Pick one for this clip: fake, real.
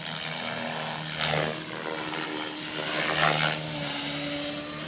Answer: real